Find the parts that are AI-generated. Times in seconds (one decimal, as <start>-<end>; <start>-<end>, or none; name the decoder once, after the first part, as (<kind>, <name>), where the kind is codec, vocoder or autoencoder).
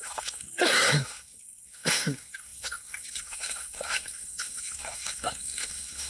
0.0-6.1 (codec, SNAC)